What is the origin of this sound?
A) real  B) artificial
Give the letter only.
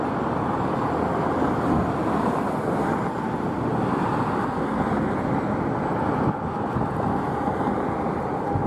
A